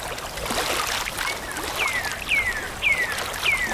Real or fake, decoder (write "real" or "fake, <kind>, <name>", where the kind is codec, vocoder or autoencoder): real